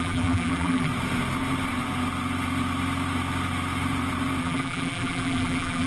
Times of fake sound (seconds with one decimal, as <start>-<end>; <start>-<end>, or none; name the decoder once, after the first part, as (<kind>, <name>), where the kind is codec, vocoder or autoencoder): 0.0-0.9 (vocoder, BigVGAN v2); 4.4-5.9